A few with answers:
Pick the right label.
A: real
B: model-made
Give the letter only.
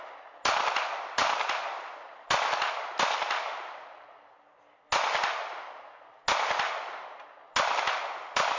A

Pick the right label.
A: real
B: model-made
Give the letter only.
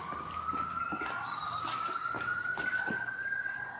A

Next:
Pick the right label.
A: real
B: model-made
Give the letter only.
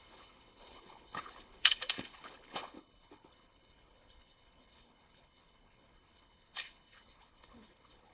B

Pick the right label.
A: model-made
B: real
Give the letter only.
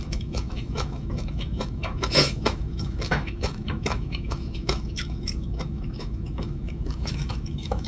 A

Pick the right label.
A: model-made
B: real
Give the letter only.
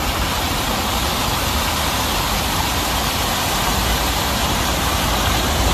A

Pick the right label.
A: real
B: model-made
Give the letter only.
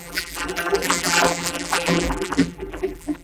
B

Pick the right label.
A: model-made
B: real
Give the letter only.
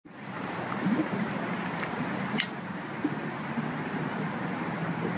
B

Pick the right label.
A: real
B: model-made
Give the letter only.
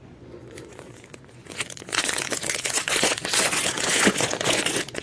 B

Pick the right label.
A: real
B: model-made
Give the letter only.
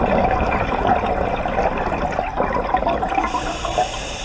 A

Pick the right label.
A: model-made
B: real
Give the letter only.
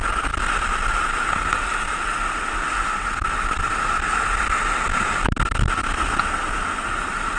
B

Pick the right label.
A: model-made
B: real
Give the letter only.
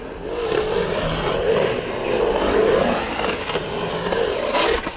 B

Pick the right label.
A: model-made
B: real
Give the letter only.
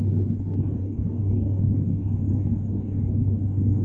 A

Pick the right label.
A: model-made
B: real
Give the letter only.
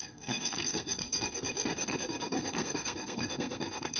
A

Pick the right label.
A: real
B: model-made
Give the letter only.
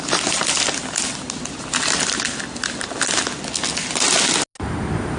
A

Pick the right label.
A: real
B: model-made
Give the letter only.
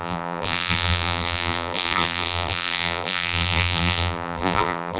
B